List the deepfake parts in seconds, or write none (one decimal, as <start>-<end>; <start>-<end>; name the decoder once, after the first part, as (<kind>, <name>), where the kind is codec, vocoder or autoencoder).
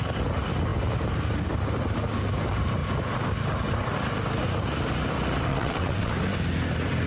5.5-6.1 (vocoder, WaveNeXt)